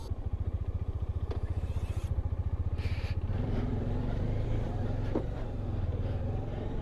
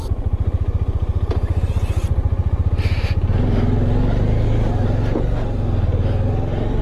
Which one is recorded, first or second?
second